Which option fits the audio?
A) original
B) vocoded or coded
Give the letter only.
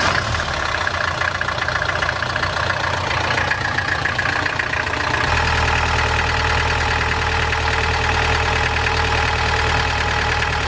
A